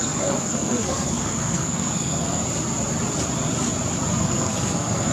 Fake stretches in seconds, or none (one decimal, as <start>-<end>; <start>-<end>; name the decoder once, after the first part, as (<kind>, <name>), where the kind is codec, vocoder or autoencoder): 0.0-2.4 (codec, SNAC); 4.1-5.1